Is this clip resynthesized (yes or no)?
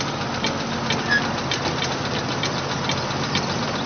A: no